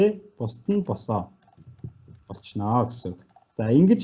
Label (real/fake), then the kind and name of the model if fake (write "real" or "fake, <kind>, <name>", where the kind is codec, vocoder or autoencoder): real